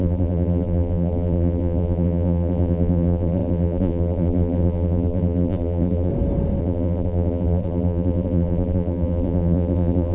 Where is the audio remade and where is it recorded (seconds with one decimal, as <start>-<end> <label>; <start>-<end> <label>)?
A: 0.0-6.1 remade; 6.1-6.6 recorded; 6.6-10.1 remade